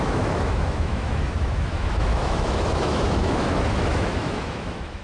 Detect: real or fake fake